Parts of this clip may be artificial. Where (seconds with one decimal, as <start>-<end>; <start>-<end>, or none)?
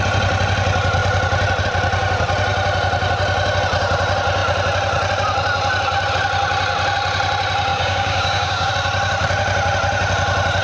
7.7-8.7